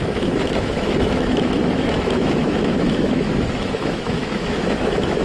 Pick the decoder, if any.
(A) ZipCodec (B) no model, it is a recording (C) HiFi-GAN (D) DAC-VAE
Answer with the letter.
D